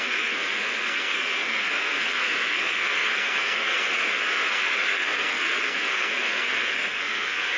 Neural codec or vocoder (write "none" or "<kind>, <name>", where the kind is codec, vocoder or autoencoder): codec, SNAC